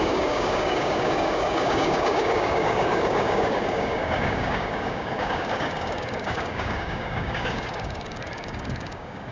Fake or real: fake